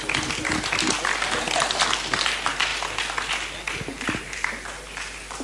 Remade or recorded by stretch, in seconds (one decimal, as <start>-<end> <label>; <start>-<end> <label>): 0.0-5.4 recorded